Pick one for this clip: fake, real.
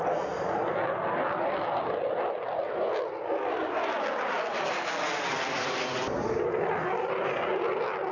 real